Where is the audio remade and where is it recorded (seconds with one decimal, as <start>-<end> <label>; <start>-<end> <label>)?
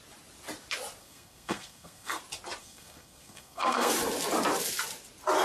0.0-1.0 recorded; 1.0-2.2 remade; 2.2-2.6 recorded; 2.6-3.9 remade; 3.9-5.4 recorded